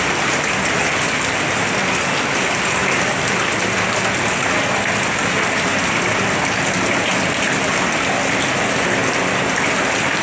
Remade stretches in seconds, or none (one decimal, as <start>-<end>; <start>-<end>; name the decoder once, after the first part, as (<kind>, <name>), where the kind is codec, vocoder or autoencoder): none